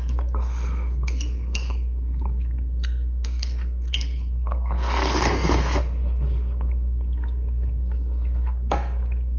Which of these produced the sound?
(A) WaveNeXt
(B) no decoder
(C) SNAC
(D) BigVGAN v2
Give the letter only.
C